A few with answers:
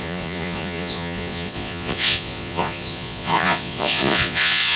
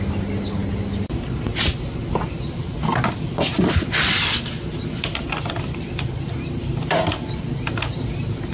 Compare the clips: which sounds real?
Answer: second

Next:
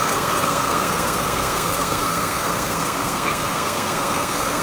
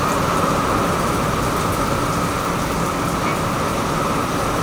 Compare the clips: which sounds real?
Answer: second